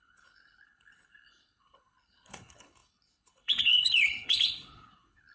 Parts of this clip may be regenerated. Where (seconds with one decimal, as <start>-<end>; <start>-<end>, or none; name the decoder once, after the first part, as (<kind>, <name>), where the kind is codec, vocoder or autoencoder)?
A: 0.0-5.3 (codec, HILCodec)